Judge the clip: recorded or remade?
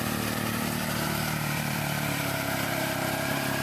remade